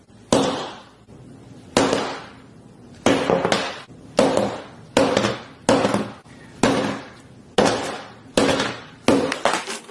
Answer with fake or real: real